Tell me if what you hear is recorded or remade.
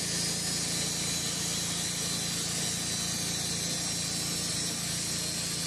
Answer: recorded